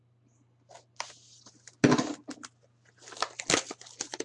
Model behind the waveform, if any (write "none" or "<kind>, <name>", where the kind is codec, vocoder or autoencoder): none